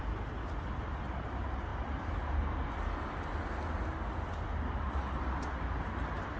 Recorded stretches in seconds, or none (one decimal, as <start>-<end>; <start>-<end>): 0.0-6.4